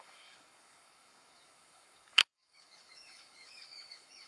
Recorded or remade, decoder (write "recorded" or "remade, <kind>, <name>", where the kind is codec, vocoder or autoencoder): remade, codec, DAC